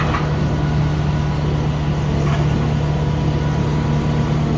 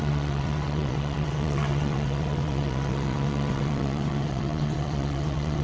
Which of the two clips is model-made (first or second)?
second